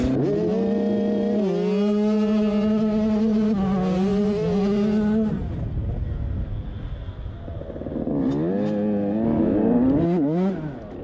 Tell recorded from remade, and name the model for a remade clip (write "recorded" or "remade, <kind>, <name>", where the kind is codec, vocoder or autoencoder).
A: recorded